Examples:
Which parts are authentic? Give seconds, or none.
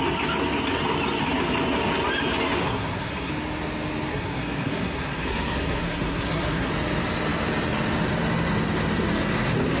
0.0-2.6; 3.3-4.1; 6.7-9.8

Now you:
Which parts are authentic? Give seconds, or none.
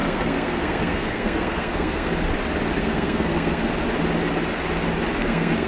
2.1-2.8; 3.7-5.1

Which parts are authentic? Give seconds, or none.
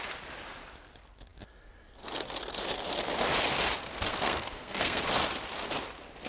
0.0-4.1; 5.0-6.3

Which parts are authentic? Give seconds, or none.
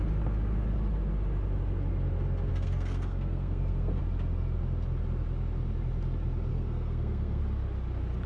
0.0-2.5; 4.0-6.5; 7.4-8.3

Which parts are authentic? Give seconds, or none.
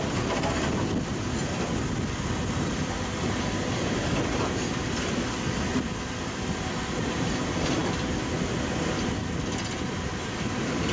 0.0-10.9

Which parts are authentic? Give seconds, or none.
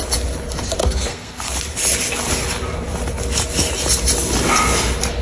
0.0-0.8; 1.5-5.2